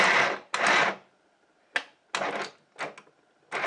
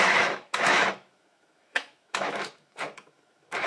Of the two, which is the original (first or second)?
first